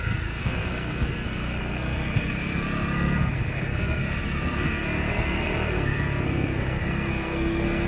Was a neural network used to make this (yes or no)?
yes